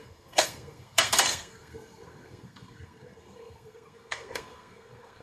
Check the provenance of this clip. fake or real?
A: fake